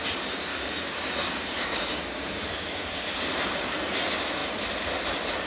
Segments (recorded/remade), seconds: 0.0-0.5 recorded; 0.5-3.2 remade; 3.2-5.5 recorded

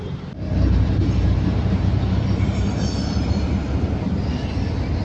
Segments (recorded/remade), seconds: 0.0-0.6 recorded; 0.6-3.6 remade; 3.6-5.0 recorded

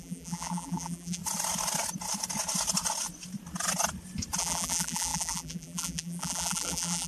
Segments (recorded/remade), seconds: 0.0-1.2 remade; 1.2-4.4 recorded; 4.4-7.1 remade

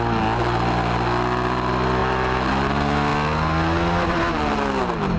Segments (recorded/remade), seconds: 0.0-5.2 recorded

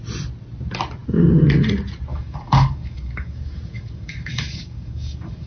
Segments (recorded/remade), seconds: 0.0-2.1 recorded; 2.1-5.5 remade

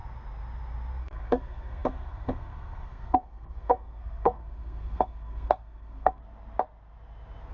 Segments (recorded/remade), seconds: 0.0-1.0 recorded; 1.0-6.2 remade; 6.2-7.5 recorded